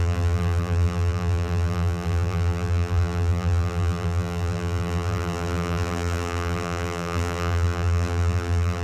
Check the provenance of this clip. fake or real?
fake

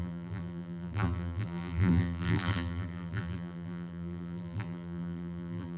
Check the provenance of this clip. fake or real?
fake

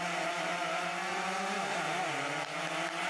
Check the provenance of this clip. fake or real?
fake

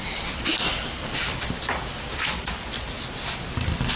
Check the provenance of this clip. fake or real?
fake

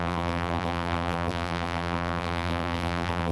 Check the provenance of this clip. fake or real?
fake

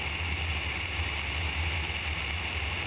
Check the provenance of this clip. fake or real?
real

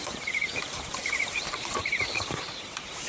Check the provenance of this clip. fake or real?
fake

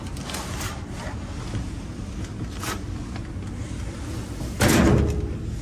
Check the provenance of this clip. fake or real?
real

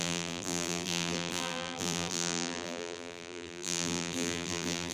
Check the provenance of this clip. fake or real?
fake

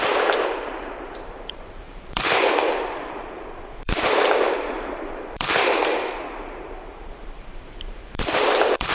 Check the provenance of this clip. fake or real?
fake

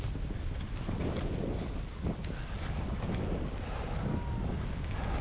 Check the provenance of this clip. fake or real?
real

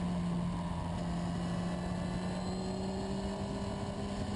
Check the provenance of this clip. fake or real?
real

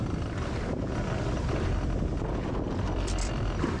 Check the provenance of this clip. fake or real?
fake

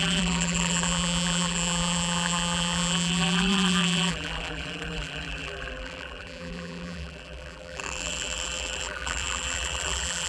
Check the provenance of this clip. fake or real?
fake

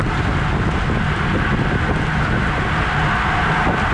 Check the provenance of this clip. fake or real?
real